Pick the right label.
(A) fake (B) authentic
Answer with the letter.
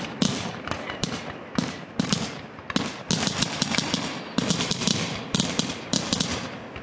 B